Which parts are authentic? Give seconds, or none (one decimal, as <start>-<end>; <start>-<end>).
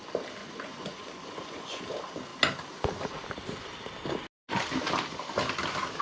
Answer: 0.0-0.4; 1.8-6.0